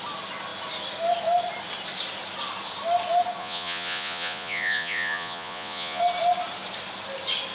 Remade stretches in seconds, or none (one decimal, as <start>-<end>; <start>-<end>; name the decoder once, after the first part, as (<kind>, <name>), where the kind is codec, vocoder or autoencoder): 3.4-6.0 (vocoder, Vocos)